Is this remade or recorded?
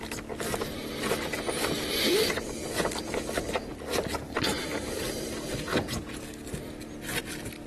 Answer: recorded